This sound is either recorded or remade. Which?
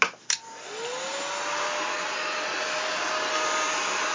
recorded